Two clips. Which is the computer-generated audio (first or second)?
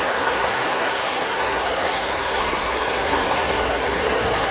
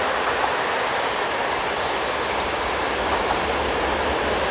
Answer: first